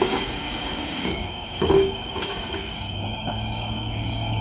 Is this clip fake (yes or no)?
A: yes